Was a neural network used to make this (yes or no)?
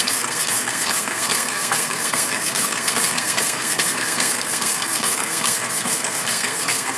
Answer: yes